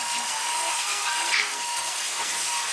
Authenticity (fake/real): fake